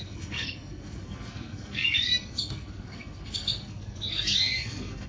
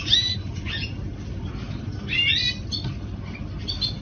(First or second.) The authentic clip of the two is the second